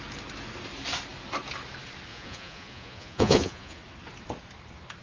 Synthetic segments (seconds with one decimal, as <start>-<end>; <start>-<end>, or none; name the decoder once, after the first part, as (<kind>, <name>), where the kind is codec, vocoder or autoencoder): 2.1-3.8 (vocoder, Vocos)